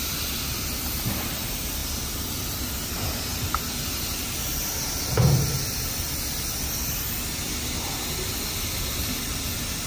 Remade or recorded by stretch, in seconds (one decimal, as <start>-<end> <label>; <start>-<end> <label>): 0.0-9.9 recorded